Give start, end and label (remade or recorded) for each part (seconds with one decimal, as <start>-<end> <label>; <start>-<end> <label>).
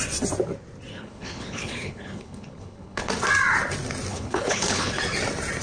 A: 0.0-0.9 recorded; 0.9-3.1 remade; 3.1-4.1 recorded; 4.1-4.9 remade; 4.9-5.6 recorded